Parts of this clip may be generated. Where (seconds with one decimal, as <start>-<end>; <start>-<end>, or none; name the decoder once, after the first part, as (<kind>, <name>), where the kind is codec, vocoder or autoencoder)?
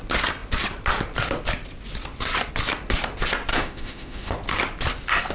3.5-4.3 (autoencoder, DAC-VAE)